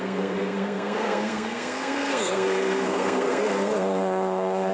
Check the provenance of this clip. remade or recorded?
remade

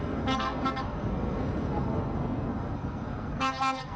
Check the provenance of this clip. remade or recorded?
remade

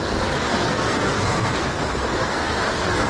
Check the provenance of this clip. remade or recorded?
remade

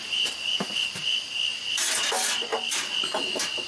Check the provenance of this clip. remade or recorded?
recorded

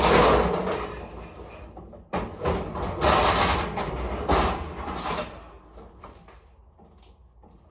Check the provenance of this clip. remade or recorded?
recorded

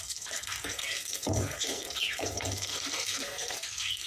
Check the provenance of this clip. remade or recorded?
remade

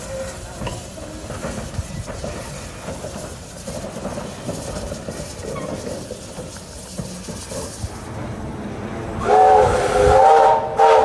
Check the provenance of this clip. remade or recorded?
recorded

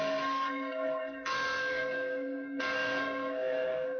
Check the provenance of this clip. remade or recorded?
remade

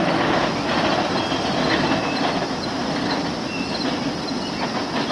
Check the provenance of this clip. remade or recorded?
recorded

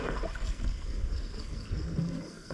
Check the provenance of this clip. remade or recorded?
remade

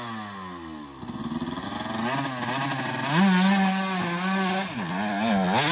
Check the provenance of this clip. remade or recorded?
recorded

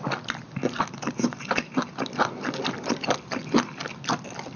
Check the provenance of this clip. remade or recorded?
recorded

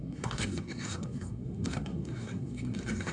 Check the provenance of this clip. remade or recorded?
remade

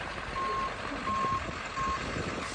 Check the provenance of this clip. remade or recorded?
recorded